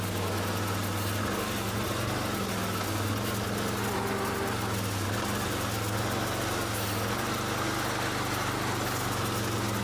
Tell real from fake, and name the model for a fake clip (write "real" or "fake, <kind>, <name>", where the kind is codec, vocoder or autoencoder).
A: real